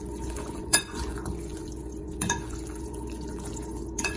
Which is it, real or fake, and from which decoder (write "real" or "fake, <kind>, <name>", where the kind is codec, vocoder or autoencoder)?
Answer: fake, vocoder, Vocos